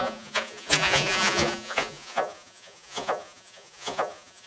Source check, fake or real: fake